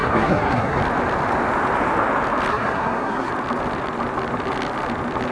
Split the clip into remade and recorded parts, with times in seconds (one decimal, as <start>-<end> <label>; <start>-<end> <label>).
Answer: 0.0-0.8 remade; 0.8-2.5 recorded; 2.5-3.3 remade; 3.3-5.3 recorded